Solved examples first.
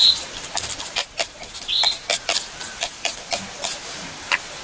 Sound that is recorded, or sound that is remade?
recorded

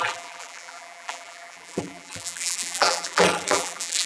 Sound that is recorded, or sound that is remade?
remade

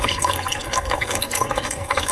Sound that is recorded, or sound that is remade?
remade